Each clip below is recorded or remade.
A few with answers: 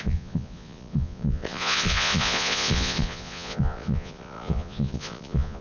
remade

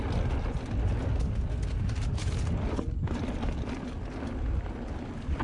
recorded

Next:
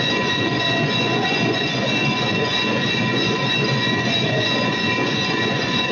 remade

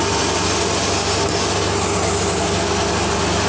recorded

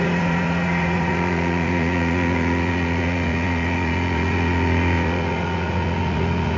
remade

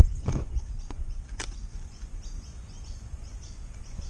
remade